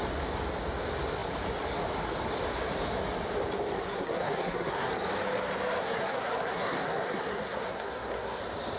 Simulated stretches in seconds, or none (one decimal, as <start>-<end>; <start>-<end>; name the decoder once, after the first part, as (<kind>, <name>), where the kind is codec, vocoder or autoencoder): 3.9-4.9 (codec, SNAC); 5.8-8.4